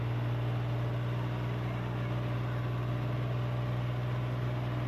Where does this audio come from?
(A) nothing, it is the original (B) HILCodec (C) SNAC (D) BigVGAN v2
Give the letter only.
A